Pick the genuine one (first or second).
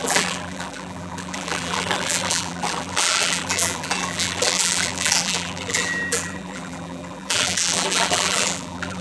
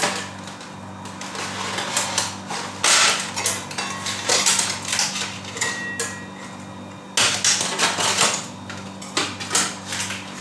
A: second